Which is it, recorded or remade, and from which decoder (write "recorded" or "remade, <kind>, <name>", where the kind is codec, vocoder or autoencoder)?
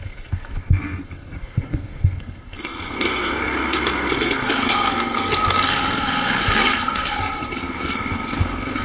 remade, codec, SNAC